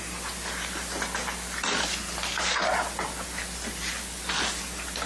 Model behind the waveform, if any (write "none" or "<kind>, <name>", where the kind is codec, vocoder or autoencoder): none